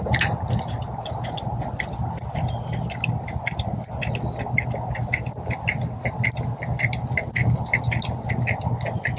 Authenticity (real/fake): real